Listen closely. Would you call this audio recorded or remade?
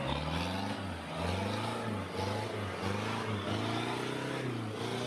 recorded